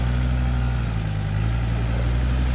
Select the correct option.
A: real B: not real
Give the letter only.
A